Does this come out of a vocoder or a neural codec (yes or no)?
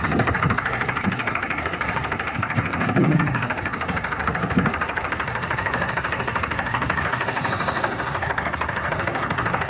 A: yes